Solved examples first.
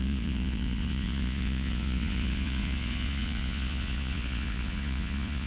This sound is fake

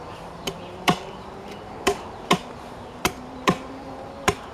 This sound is fake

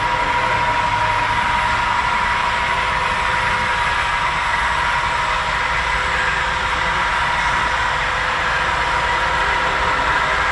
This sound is real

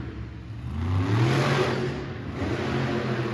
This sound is real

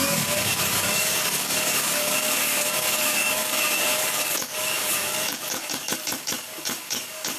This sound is fake